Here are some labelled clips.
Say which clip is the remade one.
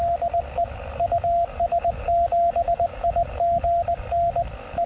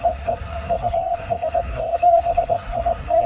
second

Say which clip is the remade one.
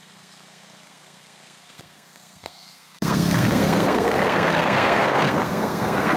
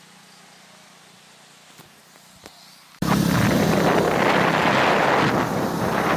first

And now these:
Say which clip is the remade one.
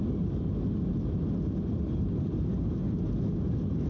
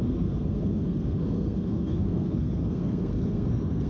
second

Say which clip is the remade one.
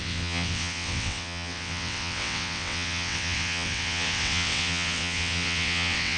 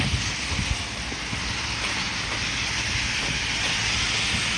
first